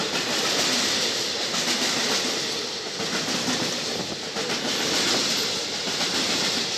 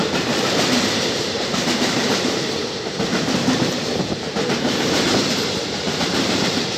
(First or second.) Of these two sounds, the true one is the first